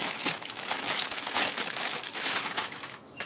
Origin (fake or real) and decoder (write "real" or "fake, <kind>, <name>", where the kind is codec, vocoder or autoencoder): fake, autoencoder, DAC-VAE